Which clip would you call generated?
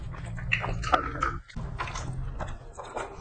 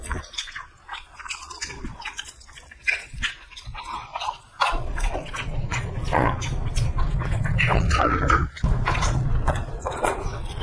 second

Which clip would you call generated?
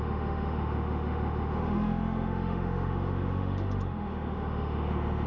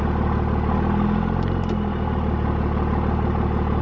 first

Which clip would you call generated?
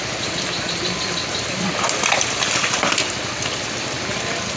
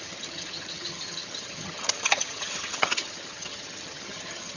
second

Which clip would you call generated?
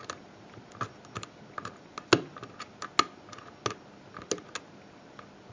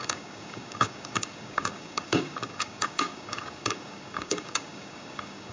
second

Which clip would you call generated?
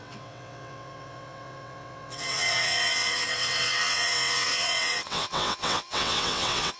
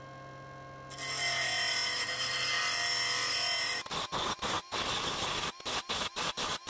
first